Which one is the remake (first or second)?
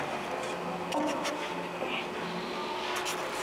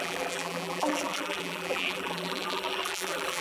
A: second